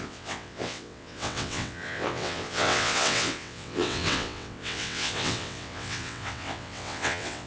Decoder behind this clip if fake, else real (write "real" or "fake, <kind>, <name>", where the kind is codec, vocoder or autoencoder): fake, vocoder, WaveNeXt